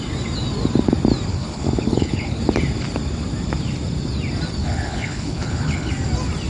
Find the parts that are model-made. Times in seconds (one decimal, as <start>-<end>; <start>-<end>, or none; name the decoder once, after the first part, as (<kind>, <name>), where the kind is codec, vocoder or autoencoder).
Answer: 1.3-2.4 (codec, HILCodec); 4.6-5.9